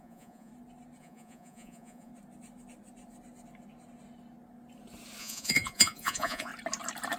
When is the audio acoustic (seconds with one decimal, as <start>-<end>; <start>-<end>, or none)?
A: 0.5-1.0; 2.1-5.2; 6.5-7.2